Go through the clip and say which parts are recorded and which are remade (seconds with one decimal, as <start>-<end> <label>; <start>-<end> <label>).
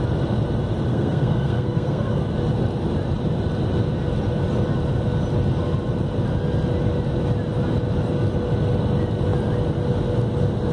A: 0.0-0.9 recorded; 0.9-2.2 remade; 2.2-10.7 recorded